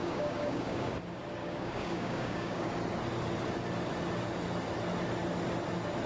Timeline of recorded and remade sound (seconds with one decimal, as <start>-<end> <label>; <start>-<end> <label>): 0.0-0.9 remade; 0.9-1.4 recorded; 1.4-2.7 remade; 2.7-6.1 recorded